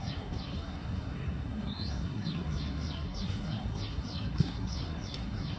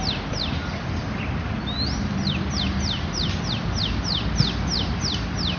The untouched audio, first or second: second